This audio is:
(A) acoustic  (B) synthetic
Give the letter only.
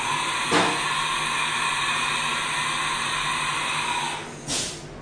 A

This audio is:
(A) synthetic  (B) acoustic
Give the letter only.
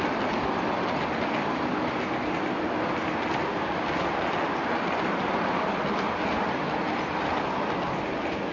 B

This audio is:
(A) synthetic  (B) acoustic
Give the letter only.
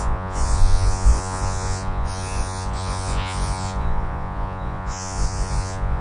A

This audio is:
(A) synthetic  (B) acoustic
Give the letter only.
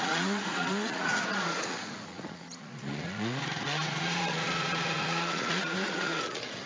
A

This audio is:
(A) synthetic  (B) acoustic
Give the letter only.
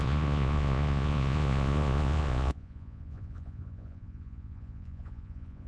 A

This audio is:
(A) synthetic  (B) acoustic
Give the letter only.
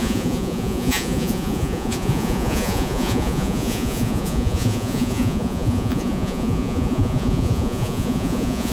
A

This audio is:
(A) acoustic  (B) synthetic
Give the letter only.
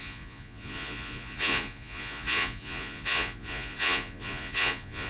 B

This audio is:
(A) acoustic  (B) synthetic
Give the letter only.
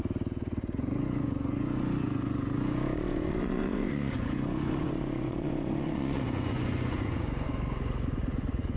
B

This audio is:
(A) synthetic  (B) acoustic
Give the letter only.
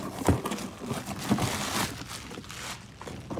B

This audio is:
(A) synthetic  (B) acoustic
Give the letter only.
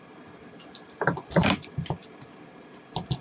B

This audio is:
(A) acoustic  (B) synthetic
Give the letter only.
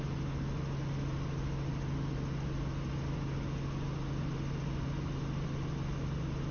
A